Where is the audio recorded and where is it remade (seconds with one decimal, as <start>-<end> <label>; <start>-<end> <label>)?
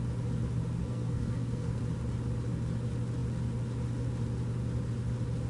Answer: 0.0-0.8 recorded; 0.8-1.8 remade; 1.8-5.5 recorded